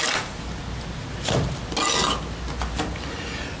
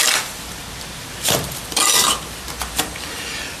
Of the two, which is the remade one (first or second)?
second